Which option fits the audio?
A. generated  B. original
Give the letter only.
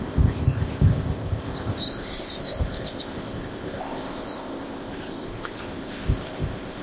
A